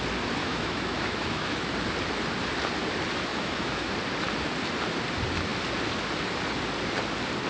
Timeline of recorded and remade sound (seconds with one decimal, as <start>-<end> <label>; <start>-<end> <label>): 0.0-0.4 recorded; 0.4-1.7 remade; 1.7-3.3 recorded; 3.3-3.9 remade; 3.9-7.5 recorded